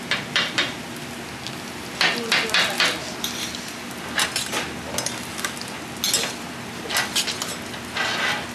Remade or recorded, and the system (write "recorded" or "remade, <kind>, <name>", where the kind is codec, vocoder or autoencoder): recorded